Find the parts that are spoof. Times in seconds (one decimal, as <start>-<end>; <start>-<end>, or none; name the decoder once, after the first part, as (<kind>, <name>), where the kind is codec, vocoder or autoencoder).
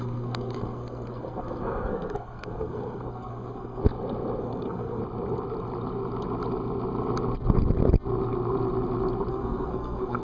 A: 0.0-3.8 (codec, SNAC); 4.4-5.0; 9.3-10.2